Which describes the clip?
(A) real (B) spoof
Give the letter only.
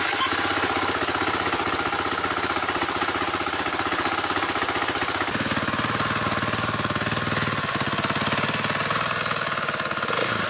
A